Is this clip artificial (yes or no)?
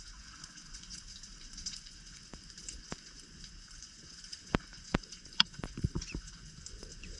yes